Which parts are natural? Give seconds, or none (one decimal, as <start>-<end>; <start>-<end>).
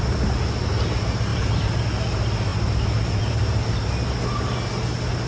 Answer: 0.0-1.3; 1.8-2.5; 3.9-5.3